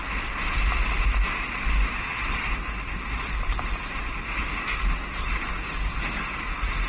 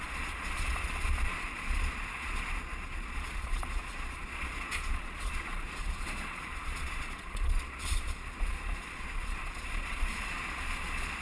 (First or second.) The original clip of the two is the first